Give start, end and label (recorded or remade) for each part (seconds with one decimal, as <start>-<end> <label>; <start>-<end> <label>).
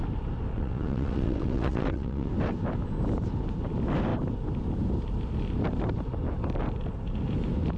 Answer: 0.0-0.5 recorded; 0.5-2.3 remade; 2.3-7.8 recorded